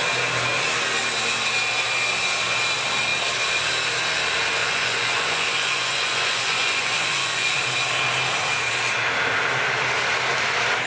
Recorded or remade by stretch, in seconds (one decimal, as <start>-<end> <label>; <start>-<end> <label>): 0.0-4.6 recorded; 4.6-7.6 remade; 7.6-10.9 recorded